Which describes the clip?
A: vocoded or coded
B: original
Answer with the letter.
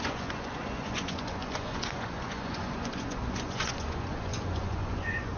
A